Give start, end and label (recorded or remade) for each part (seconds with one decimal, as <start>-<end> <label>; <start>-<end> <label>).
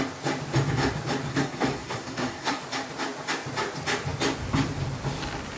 0.0-1.3 recorded; 1.3-2.6 remade; 2.6-5.6 recorded